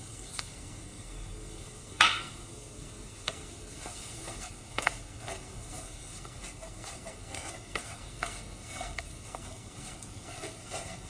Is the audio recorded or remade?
remade